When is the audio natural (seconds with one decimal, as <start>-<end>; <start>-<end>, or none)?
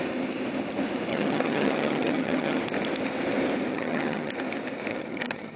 0.0-1.1; 2.6-3.7; 4.3-4.9